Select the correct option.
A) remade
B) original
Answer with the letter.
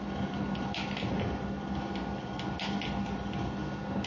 B